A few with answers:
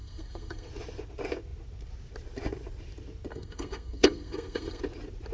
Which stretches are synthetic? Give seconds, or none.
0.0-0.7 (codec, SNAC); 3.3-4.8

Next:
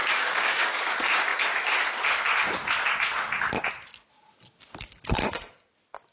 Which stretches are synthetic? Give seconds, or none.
0.0-0.8 (codec, DAC)

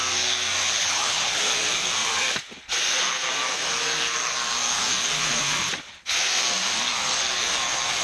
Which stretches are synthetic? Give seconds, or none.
0.6-1.4 (codec, HILCodec)

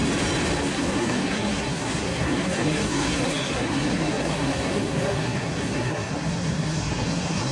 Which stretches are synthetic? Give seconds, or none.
0.7-7.5 (codec, SNAC)